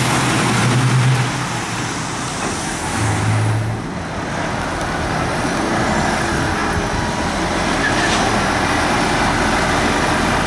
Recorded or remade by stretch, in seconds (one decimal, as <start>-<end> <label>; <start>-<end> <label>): 0.0-10.5 recorded